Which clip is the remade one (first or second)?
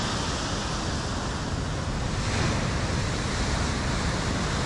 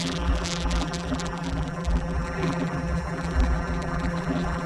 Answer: second